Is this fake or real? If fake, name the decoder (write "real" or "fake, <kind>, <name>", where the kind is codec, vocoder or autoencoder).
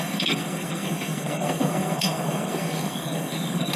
fake, codec, SNAC